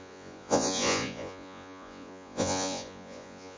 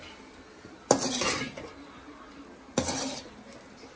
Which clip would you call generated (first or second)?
first